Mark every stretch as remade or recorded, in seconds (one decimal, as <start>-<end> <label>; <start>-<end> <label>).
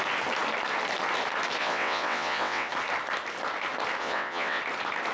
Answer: 0.0-1.6 recorded; 1.6-2.7 remade; 2.7-4.0 recorded; 4.0-4.6 remade; 4.6-5.1 recorded